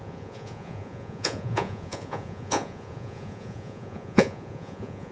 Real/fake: fake